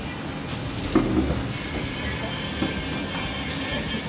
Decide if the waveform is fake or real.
real